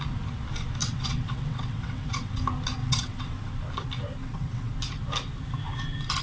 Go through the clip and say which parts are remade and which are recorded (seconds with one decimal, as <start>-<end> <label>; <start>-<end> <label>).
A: 0.0-0.8 recorded; 0.8-2.4 remade; 2.4-2.8 recorded; 2.8-3.5 remade; 3.5-4.2 recorded; 4.2-4.7 remade; 4.7-6.2 recorded